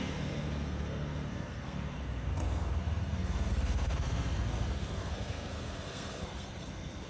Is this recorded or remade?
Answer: remade